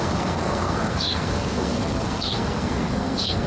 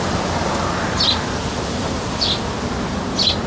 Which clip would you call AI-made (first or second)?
first